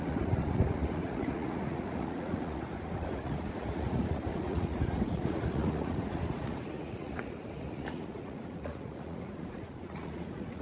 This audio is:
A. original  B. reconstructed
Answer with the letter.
B